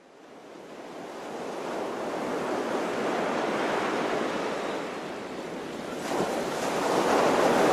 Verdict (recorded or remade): remade